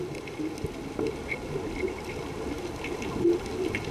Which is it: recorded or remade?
recorded